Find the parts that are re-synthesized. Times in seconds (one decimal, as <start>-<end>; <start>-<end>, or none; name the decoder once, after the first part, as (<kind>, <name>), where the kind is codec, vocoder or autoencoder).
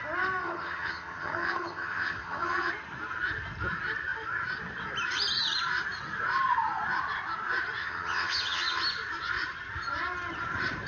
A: 0.4-2.7 (vocoder, HiFi-GAN); 7.8-8.8